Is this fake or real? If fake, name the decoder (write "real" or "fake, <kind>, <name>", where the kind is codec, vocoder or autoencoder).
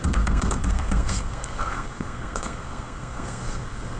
fake, codec, SNAC